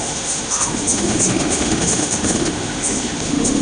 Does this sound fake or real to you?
fake